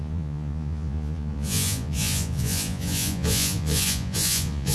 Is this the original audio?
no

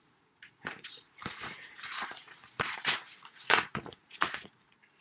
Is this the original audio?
no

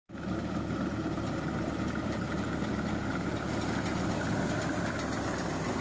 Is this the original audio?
yes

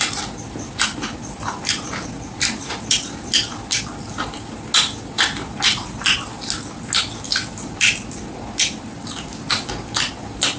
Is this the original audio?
yes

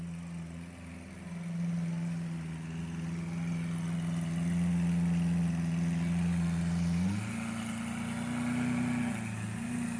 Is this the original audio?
yes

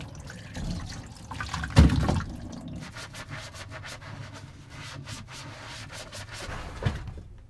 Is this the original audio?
yes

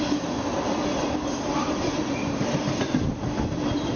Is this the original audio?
yes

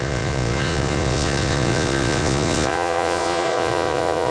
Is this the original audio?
no